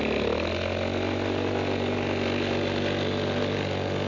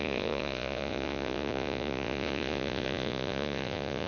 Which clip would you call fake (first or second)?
second